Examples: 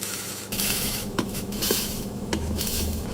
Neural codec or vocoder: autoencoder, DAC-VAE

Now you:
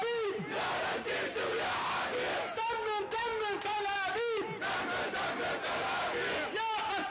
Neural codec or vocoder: none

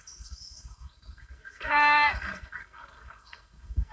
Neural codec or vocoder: codec, SNAC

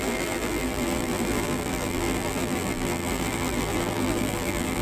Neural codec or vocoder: vocoder, BigVGAN v2